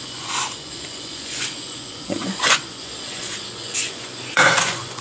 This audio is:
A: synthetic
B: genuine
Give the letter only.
A